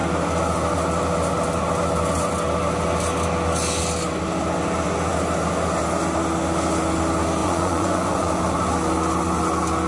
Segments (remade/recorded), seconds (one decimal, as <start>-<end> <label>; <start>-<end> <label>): 0.0-7.4 recorded; 7.4-8.3 remade; 8.3-9.9 recorded